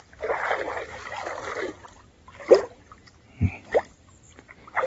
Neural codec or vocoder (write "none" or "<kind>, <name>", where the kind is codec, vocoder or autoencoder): none